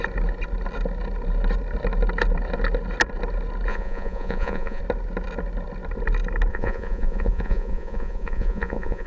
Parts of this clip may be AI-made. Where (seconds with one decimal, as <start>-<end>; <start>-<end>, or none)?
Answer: 3.7-4.8; 6.5-9.1